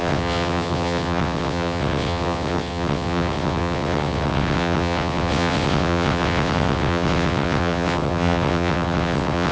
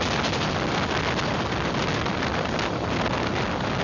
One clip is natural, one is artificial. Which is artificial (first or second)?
first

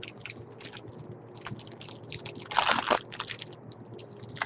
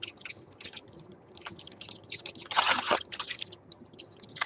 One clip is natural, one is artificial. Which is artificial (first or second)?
second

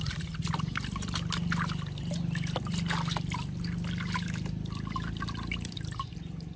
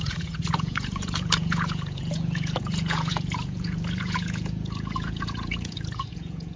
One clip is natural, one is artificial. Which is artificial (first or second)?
second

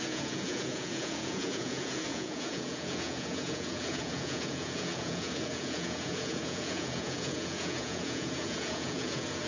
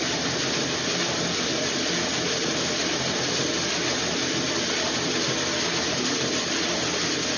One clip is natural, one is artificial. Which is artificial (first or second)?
first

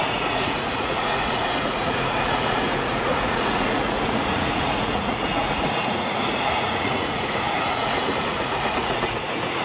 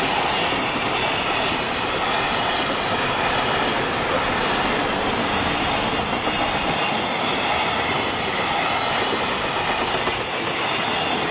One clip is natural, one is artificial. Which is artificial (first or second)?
first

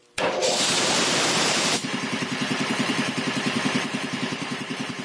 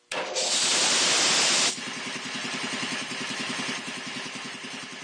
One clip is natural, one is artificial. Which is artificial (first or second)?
first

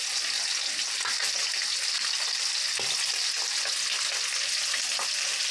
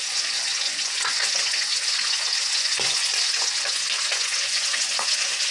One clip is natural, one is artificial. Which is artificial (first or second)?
second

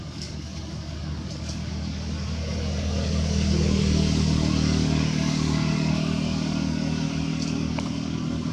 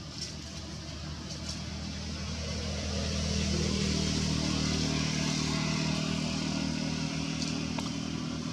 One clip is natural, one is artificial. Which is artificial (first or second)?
first